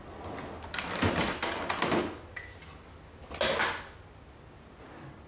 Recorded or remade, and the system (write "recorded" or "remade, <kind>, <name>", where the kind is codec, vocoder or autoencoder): recorded